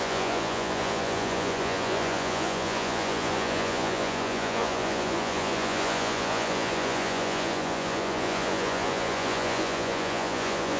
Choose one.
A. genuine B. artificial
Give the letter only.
B